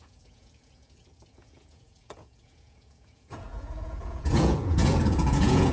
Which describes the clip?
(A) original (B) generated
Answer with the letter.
B